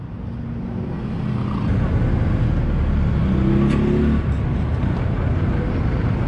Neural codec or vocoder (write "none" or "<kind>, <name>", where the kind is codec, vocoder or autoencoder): none